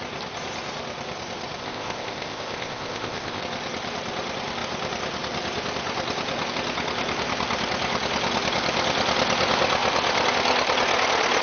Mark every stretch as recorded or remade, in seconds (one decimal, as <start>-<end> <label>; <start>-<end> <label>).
0.0-1.6 recorded; 1.6-3.4 remade; 3.4-11.4 recorded